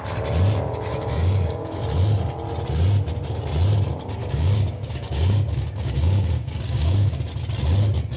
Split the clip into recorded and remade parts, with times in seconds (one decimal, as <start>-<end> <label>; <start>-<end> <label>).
0.0-0.9 recorded; 0.9-1.8 remade; 1.8-4.2 recorded; 4.2-7.2 remade; 7.2-8.2 recorded